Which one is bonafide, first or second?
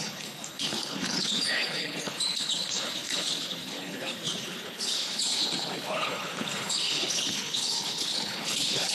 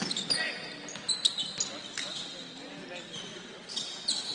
second